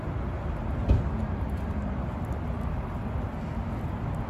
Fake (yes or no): no